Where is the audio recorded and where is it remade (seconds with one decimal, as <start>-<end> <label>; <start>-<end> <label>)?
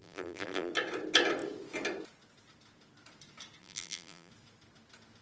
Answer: 0.0-0.7 remade; 0.7-3.6 recorded; 3.6-4.3 remade; 4.3-5.2 recorded